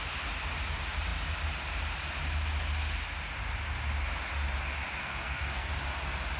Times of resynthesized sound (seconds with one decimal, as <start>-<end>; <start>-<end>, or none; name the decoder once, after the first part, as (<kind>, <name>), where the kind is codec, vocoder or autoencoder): 5.0-5.7 (codec, SNAC)